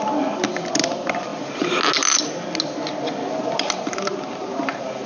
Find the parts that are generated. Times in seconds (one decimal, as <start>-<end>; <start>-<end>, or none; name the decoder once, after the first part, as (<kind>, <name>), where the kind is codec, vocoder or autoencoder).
none